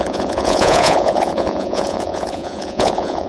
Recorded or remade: remade